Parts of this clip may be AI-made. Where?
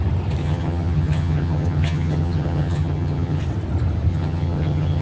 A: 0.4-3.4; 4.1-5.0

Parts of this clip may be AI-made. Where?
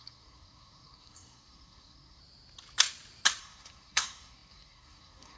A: 0.0-2.2; 3.4-5.4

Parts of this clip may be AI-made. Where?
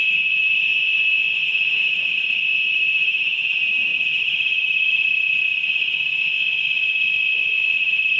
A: 0.0-0.5; 2.6-3.9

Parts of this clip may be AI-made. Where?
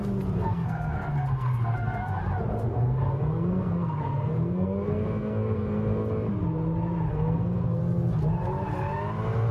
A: 0.4-2.1; 2.7-6.3; 7.1-7.8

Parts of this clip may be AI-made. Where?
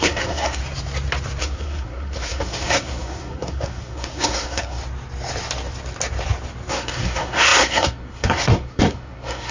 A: 0.0-0.6; 1.4-4.8; 6.7-9.5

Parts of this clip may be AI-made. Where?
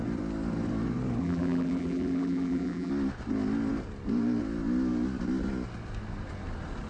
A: 1.2-2.9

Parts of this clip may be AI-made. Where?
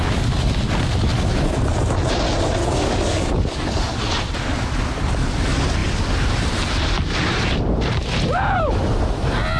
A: 2.6-4.0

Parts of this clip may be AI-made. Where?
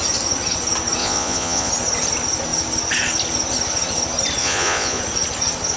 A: 1.0-1.7; 4.4-5.0